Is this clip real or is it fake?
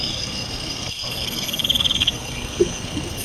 fake